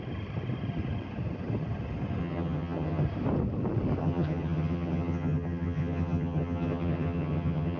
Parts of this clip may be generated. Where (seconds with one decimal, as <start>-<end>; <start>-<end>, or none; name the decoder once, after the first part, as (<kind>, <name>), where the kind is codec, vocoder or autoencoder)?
2.2-3.0 (vocoder, HiFi-GAN); 4.0-7.8